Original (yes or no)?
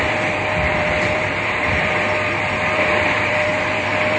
no